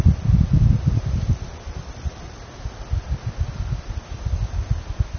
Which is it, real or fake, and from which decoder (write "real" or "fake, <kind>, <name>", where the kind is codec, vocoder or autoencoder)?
real